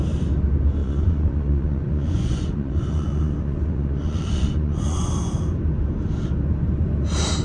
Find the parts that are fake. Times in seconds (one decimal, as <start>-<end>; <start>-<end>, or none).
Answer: 0.8-5.1